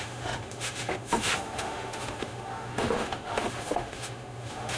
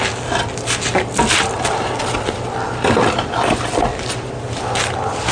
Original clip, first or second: second